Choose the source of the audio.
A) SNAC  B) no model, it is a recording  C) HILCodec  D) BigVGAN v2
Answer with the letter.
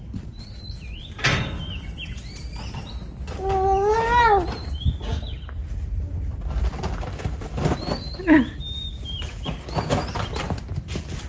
B